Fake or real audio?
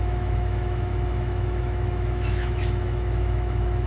fake